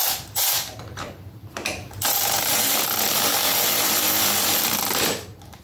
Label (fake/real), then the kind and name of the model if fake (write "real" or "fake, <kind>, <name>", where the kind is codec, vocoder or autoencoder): fake, vocoder, BigVGAN v2